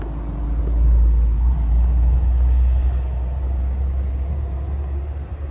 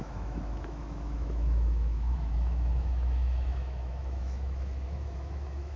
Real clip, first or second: first